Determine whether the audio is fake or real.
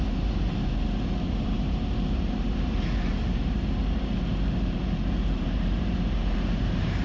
fake